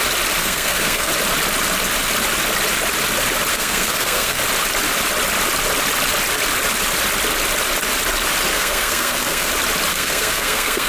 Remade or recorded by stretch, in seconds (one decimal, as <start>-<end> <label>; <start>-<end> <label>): 0.0-0.4 recorded; 0.4-1.1 remade; 1.1-3.5 recorded; 3.5-4.4 remade; 4.4-8.5 recorded; 8.5-9.5 remade; 9.5-9.9 recorded; 9.9-10.9 remade